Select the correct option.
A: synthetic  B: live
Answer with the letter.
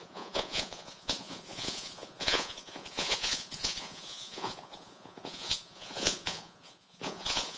A